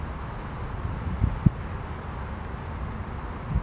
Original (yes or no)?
yes